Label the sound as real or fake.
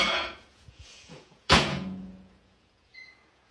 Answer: fake